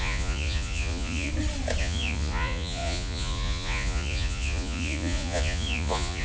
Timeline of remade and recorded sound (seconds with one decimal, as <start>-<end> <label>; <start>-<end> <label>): 0.0-1.3 remade; 1.3-1.8 recorded; 1.8-6.2 remade